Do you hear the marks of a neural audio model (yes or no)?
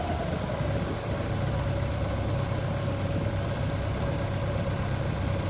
no